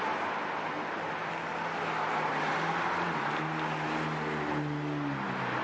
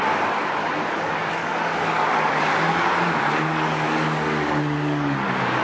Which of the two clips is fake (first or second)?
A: second